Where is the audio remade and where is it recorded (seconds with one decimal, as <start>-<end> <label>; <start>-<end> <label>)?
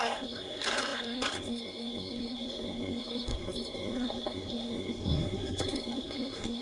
0.0-6.6 remade